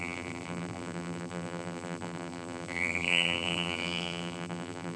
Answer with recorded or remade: remade